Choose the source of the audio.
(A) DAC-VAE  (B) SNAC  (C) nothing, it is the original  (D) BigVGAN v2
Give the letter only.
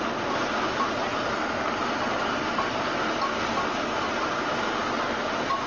C